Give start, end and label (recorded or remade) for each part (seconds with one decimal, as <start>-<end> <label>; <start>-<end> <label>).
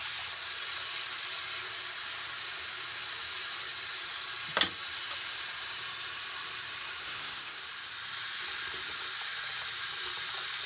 0.0-7.0 recorded; 7.0-7.6 remade; 7.6-10.7 recorded